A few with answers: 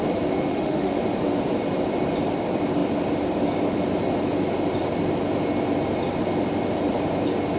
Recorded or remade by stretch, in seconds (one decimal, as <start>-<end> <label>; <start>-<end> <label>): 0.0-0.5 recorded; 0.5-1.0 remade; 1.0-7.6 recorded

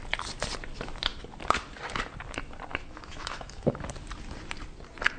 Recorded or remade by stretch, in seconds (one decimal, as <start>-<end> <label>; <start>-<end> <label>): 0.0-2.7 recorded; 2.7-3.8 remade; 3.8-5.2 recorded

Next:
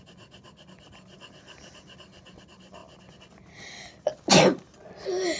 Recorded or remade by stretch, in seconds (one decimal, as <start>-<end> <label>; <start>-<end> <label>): 0.0-5.4 recorded